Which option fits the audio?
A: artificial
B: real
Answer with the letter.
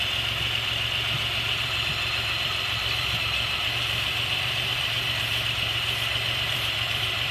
A